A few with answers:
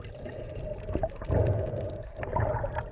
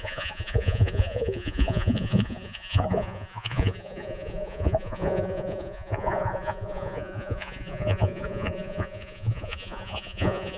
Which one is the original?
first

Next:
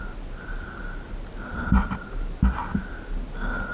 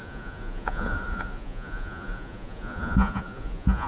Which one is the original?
first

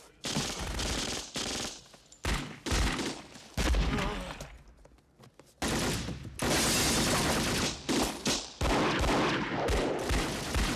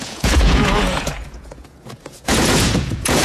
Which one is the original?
first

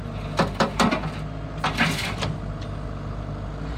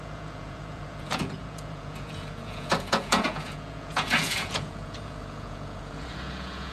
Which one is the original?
first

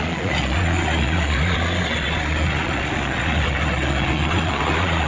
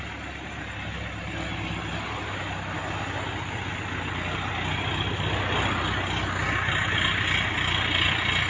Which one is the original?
second